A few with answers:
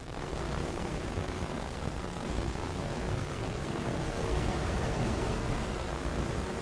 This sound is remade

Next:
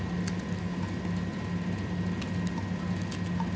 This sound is recorded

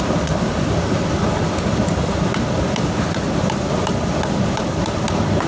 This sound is remade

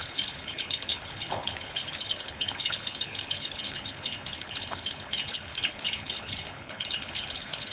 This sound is remade